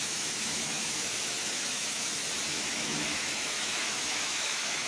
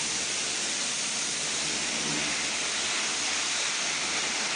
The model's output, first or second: first